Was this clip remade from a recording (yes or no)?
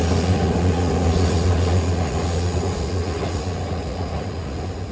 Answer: yes